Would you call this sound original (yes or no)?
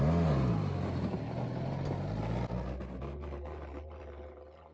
yes